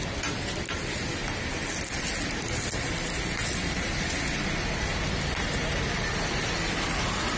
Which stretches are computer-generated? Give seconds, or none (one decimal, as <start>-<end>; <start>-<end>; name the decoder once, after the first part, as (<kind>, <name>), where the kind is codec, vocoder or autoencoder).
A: none